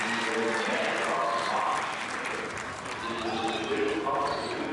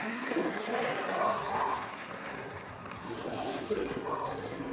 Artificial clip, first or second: second